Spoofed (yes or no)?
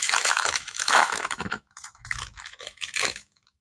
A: yes